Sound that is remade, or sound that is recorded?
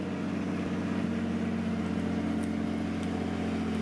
recorded